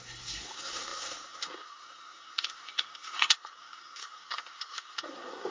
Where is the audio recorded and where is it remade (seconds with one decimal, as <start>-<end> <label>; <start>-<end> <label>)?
0.0-5.5 remade